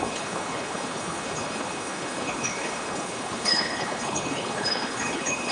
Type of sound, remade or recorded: remade